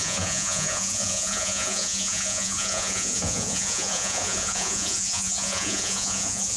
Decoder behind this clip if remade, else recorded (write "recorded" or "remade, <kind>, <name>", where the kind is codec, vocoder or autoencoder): remade, vocoder, Vocos